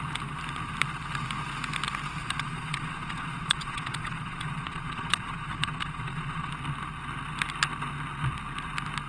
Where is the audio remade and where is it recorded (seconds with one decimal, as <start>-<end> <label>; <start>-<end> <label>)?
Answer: 0.0-2.2 recorded; 2.2-6.5 remade; 6.5-9.1 recorded